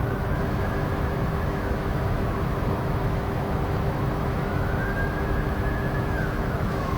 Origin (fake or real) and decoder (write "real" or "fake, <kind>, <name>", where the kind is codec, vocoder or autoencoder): fake, autoencoder, DAC-VAE